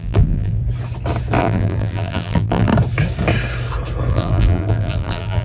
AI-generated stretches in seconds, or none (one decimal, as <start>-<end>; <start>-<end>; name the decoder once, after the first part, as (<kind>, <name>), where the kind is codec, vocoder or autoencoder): 0.0-0.6 (vocoder, BigVGAN v2); 1.4-2.7; 4.1-5.4